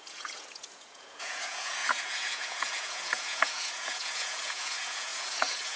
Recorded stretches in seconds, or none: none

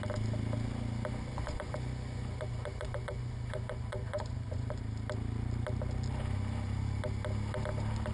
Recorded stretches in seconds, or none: 0.0-1.3; 4.8-8.1

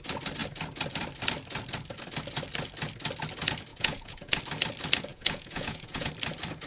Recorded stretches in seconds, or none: 0.0-3.7; 4.4-5.1; 6.1-6.7

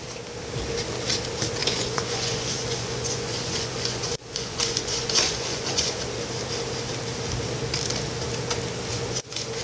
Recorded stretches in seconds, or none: 0.0-1.6; 6.0-8.9